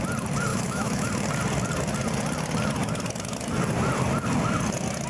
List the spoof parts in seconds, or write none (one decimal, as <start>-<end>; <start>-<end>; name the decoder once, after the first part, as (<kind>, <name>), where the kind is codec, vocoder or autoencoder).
0.5-1.1 (autoencoder, DAC-VAE)